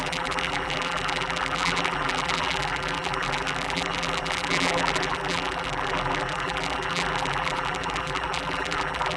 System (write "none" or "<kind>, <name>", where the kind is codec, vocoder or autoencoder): vocoder, BigVGAN v2